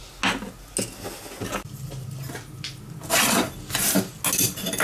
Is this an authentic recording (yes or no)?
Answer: yes